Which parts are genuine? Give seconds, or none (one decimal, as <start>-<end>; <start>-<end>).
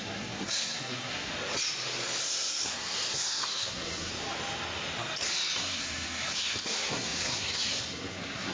1.3-2.2; 4.1-5.6